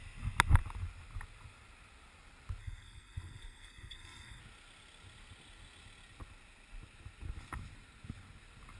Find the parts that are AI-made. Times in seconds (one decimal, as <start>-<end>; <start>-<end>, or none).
2.6-4.4